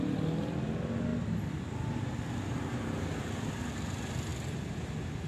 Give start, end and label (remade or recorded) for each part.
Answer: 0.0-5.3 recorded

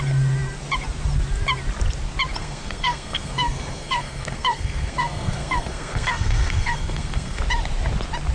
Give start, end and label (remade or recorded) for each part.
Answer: 0.0-2.4 recorded; 2.4-7.4 remade; 7.4-8.3 recorded